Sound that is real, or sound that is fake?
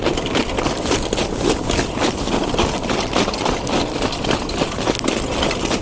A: real